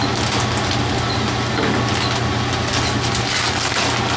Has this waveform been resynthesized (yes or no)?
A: no